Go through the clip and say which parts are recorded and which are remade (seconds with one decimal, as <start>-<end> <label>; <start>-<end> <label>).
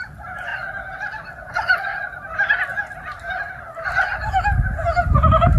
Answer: 0.0-0.5 remade; 0.5-1.5 recorded; 1.5-1.9 remade; 1.9-5.0 recorded; 5.0-5.6 remade